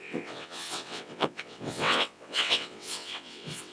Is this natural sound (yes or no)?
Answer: no